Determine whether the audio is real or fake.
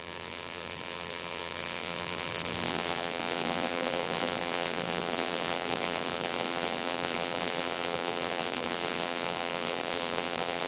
fake